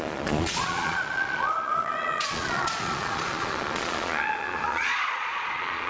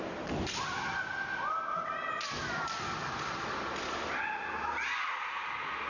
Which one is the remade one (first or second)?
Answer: first